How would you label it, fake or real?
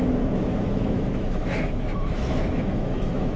fake